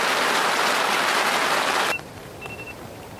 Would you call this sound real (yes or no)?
no